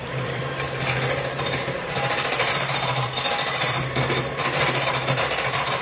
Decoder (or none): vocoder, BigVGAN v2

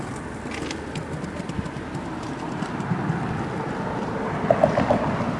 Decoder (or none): none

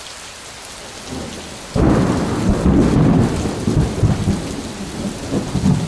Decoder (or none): none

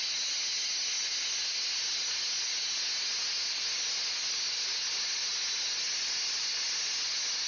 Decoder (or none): none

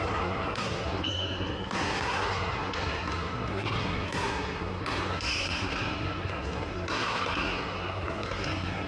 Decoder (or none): codec, SNAC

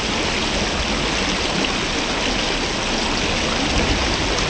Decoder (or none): none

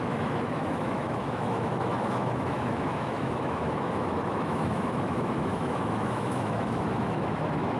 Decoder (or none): autoencoder, DAC-VAE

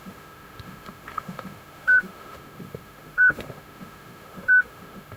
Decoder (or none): autoencoder, DAC-VAE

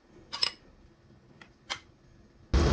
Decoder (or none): none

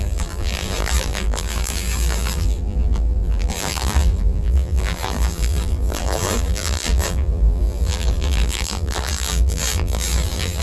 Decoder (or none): vocoder, BigVGAN v2